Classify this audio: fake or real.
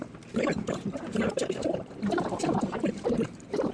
fake